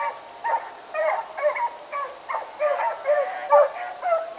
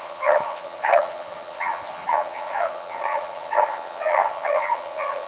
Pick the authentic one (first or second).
first